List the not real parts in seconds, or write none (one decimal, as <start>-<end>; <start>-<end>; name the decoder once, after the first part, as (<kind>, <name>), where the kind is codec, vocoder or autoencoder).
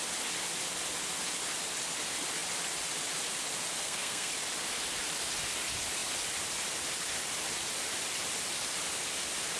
3.8-4.3 (codec, SNAC)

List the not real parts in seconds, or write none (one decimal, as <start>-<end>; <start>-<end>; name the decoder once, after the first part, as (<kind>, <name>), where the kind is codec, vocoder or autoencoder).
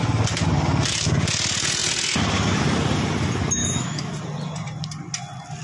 3.6-4.1 (autoencoder, DAC-VAE)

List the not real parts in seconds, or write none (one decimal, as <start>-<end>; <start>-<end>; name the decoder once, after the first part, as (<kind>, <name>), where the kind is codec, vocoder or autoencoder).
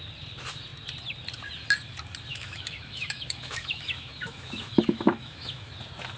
2.3-5.7 (autoencoder, DAC-VAE)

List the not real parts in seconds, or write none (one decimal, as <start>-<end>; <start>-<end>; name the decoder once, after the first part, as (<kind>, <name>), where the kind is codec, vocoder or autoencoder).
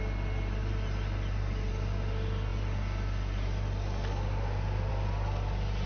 none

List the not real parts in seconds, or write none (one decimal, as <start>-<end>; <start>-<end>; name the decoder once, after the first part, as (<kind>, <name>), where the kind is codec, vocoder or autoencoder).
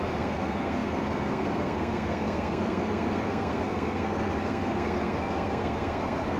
0.0-6.4 (codec, SNAC)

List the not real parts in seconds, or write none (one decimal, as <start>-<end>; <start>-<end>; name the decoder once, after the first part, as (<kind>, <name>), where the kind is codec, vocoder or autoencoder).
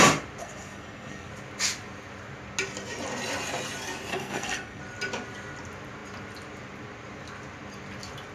0.4-1.3 (codec, SNAC); 4.1-4.8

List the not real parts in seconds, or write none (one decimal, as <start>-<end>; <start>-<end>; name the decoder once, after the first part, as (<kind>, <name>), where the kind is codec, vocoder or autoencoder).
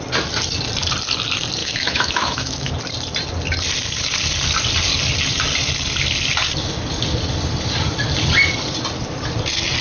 1.6-2.7 (autoencoder, DAC-VAE)